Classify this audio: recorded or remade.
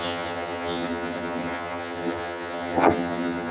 remade